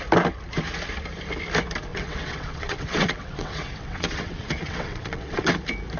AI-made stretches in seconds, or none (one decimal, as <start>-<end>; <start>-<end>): 1.9-5.5